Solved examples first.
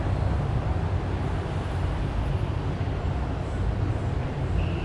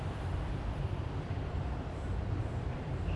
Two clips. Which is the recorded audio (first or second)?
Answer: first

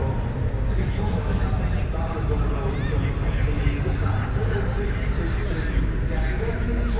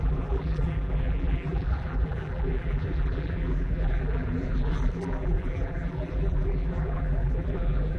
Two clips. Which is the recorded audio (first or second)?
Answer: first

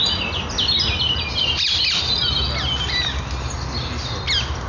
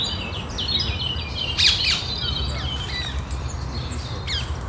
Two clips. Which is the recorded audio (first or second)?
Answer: first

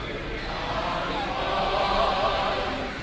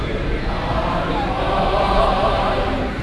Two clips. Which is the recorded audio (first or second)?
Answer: first